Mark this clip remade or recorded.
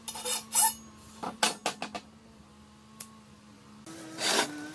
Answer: recorded